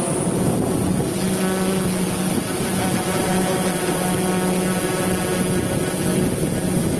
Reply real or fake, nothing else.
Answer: real